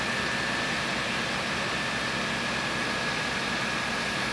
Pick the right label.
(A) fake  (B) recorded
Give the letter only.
B